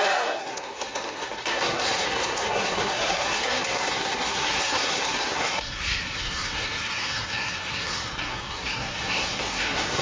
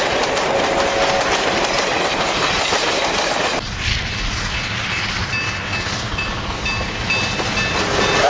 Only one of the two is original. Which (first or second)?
second